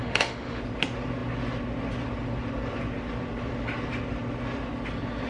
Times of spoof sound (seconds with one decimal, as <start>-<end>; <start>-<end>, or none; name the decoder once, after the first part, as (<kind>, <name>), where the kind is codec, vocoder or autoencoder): 0.0-0.6 (autoencoder, DAC-VAE)